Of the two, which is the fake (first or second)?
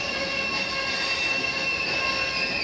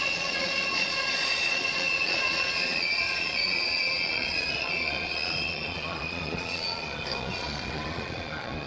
second